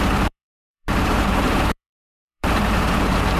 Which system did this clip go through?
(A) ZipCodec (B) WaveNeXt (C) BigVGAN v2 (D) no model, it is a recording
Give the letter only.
C